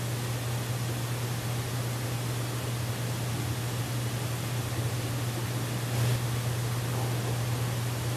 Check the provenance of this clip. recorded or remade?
recorded